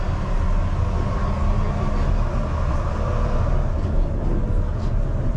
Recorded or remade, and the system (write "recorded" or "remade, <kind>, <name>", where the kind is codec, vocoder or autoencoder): recorded